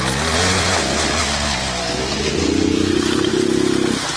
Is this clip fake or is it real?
real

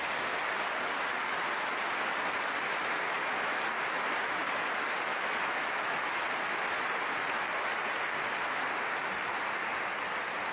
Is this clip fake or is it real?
real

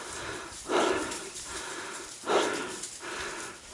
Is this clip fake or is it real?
real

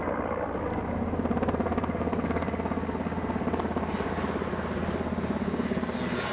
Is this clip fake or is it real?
real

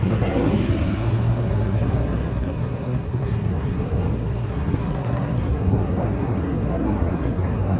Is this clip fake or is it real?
fake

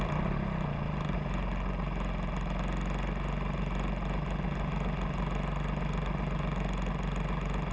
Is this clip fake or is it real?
real